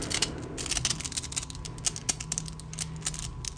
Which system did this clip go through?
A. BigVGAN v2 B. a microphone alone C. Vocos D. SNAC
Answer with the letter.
B